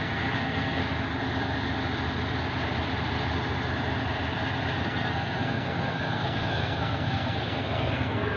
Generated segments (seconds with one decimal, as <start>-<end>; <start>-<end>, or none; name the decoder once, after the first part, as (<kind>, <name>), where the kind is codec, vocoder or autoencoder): 0.0-0.8 (codec, SNAC); 4.8-8.4